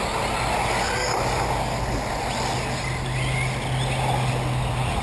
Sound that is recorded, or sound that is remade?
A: recorded